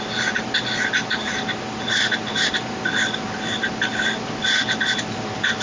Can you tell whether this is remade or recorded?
recorded